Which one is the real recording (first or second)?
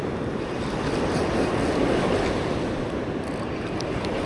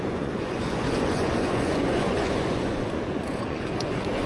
first